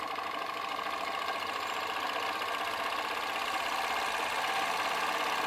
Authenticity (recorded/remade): recorded